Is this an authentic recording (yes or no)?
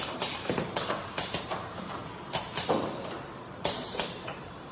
no